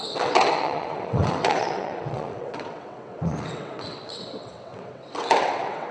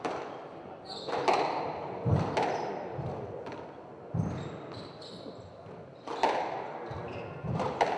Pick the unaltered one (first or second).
second